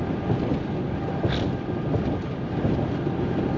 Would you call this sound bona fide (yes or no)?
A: no